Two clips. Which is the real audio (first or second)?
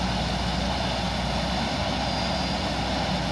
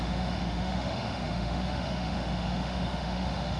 first